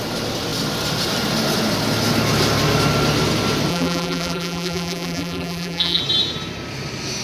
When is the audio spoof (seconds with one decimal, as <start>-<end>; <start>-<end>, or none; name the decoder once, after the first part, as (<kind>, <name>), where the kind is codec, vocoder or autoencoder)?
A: 3.7-6.0 (vocoder, BigVGAN v2)